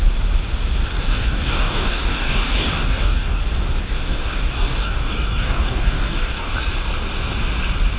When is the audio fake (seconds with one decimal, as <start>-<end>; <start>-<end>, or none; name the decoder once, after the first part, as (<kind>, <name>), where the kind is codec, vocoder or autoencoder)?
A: 0.9-3.4 (codec, DAC); 3.8-6.5